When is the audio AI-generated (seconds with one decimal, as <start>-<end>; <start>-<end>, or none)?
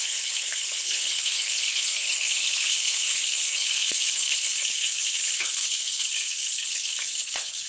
0.0-7.7